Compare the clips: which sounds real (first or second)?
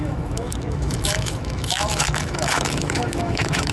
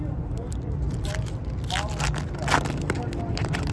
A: second